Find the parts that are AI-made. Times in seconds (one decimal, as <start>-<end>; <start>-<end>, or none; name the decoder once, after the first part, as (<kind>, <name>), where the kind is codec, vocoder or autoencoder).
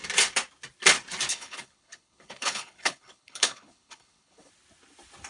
1.3-4.5 (codec, HILCodec)